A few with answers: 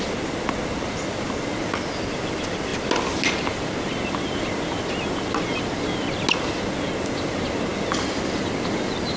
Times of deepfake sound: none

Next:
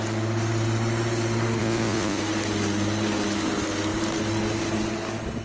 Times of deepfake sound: 1.6-2.2 (vocoder, Vocos)